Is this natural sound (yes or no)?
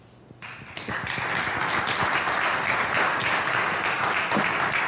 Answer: yes